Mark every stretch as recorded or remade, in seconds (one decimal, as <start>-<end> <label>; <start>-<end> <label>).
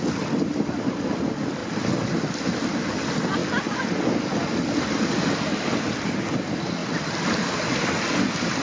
0.0-1.6 remade; 1.6-2.3 recorded; 2.3-3.4 remade; 3.4-5.1 recorded; 5.1-6.8 remade; 6.8-7.8 recorded; 7.8-8.6 remade